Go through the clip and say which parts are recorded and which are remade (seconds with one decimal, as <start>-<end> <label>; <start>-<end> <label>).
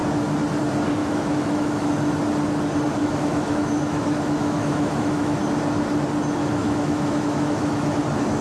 0.0-1.0 recorded; 1.0-1.9 remade; 1.9-3.0 recorded; 3.0-5.4 remade; 5.4-6.4 recorded; 6.4-8.0 remade; 8.0-8.4 recorded